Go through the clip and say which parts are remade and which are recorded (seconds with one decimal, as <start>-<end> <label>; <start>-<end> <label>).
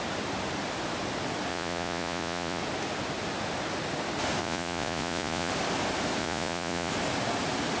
0.0-1.5 recorded; 1.5-2.6 remade; 2.6-4.4 recorded; 4.4-5.5 remade; 5.5-6.2 recorded; 6.2-6.9 remade; 6.9-7.8 recorded